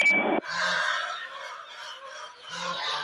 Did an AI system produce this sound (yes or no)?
no